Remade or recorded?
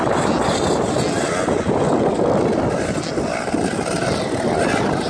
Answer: recorded